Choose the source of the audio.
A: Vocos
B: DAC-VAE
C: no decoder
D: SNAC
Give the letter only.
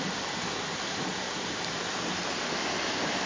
C